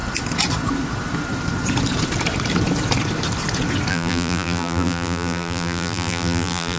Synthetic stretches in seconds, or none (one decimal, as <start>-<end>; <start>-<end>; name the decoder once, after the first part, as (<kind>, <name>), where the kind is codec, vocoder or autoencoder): 3.9-6.8 (vocoder, BigVGAN v2)

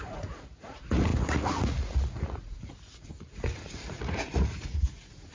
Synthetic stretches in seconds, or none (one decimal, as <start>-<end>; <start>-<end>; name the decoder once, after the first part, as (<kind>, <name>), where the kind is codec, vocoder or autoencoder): 0.0-5.3 (vocoder, Vocos)

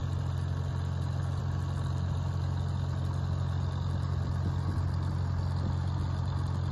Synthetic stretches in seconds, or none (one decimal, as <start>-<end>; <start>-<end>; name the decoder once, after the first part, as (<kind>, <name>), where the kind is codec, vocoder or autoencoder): none

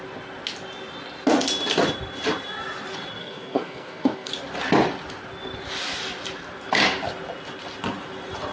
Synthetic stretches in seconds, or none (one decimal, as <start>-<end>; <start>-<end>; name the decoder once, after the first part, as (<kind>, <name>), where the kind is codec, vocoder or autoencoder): 3.2-4.3 (codec, SNAC)

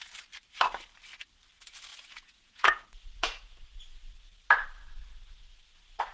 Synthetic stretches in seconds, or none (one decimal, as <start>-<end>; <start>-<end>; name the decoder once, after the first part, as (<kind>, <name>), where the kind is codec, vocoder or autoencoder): 1.9-3.6 (vocoder, Vocos)

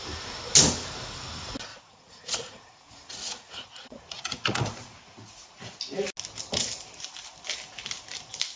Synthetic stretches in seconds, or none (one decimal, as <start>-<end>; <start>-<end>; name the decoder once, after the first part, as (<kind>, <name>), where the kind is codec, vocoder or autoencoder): 1.7-5.8 (vocoder, Vocos)

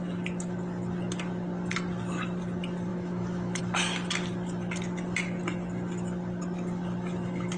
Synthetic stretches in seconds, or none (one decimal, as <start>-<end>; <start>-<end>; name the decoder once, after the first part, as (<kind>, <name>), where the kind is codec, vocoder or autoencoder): 2.9-3.6 (autoencoder, DAC-VAE)

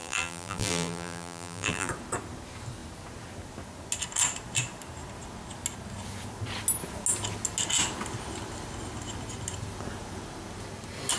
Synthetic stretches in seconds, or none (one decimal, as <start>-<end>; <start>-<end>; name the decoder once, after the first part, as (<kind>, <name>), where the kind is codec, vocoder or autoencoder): 0.0-1.9 (vocoder, BigVGAN v2)